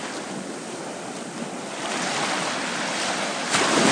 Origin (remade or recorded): recorded